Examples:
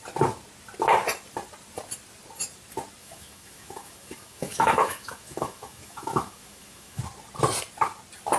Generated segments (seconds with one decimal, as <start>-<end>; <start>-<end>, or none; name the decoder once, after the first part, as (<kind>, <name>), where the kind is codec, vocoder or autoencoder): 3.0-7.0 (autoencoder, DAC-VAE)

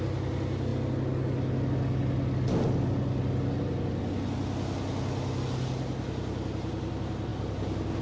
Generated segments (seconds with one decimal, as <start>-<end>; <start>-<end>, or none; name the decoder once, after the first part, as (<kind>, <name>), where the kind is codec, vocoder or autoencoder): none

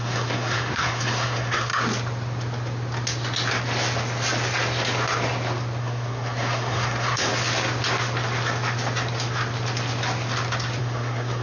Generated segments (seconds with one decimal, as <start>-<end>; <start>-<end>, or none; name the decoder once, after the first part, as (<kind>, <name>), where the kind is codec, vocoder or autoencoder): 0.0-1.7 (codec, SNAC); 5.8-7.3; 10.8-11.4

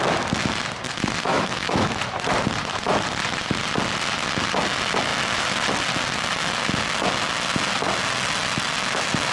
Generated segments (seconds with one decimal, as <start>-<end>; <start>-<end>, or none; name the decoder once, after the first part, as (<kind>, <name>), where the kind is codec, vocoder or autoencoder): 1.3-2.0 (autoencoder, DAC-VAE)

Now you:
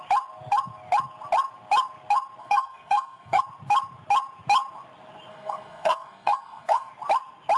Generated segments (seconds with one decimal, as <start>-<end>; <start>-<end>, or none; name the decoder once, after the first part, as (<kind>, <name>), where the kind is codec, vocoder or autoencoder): 2.4-3.4 (codec, SNAC); 5.3-6.9